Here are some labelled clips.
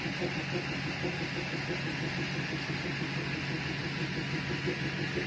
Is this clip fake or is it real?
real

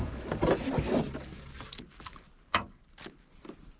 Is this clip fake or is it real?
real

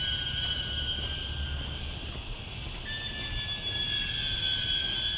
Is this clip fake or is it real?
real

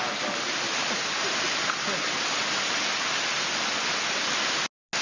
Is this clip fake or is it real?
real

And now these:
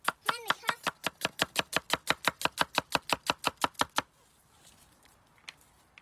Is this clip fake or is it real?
fake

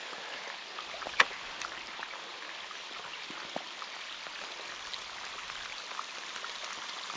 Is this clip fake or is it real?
real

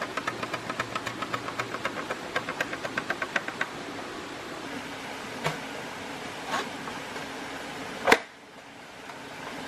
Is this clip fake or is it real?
real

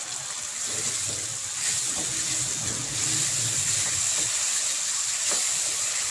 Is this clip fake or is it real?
real